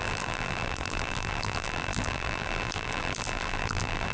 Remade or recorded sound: remade